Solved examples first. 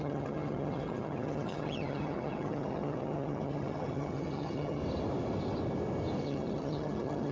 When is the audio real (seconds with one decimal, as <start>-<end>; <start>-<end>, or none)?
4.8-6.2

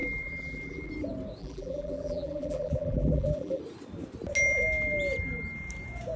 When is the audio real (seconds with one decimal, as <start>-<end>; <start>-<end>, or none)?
0.9-1.4; 3.6-6.2

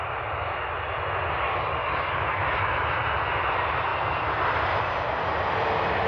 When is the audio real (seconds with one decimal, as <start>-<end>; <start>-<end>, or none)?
0.0-1.8; 2.6-6.1

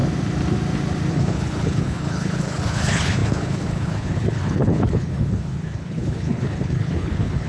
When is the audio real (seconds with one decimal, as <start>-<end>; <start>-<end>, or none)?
0.0-1.1

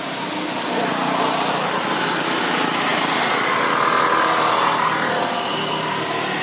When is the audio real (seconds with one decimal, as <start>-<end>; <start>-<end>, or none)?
0.0-6.4

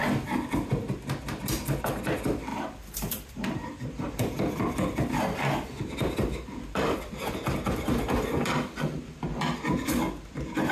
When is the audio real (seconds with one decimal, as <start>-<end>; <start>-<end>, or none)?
0.0-2.5; 7.3-10.7

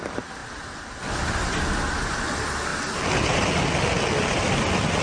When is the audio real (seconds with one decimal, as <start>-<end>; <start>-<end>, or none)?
0.0-5.0